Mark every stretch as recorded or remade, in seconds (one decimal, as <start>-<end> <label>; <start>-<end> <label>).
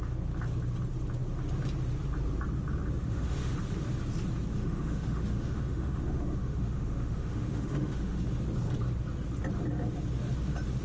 0.0-3.0 recorded; 3.0-3.6 remade; 3.6-4.5 recorded; 4.5-8.2 remade; 8.2-10.8 recorded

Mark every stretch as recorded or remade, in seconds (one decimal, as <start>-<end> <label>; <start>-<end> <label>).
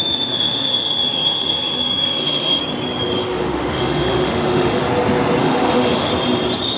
0.0-2.6 remade; 2.6-3.2 recorded; 3.2-4.8 remade; 4.8-5.4 recorded; 5.4-6.1 remade; 6.1-6.8 recorded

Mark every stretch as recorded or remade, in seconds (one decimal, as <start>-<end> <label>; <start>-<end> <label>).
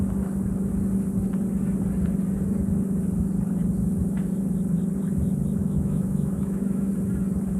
0.0-5.6 recorded; 5.6-6.9 remade; 6.9-7.6 recorded